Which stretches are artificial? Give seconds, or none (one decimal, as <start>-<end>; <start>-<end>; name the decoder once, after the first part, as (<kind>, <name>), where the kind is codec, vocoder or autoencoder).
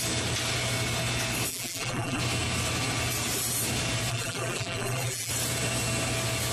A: 1.5-2.2 (vocoder, BigVGAN v2); 4.1-5.3